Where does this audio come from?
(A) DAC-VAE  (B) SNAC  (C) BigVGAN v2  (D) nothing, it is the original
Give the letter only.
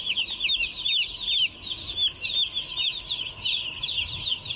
D